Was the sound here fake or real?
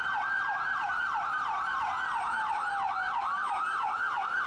real